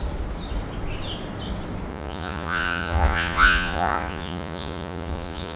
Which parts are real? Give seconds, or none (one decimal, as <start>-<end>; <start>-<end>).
0.0-1.9